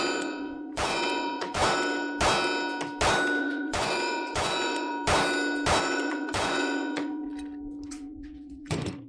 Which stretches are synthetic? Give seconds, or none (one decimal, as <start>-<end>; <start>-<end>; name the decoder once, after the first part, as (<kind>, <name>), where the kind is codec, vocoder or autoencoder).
0.0-1.6 (vocoder, Vocos); 3.4-4.9; 5.8-7.3; 7.9-9.1

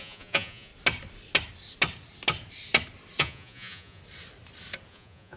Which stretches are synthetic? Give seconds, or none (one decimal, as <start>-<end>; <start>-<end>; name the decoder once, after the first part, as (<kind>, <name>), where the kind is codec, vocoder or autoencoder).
0.0-0.7 (vocoder, Vocos); 3.2-4.0; 4.9-5.4